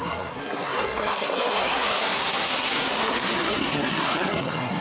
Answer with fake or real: fake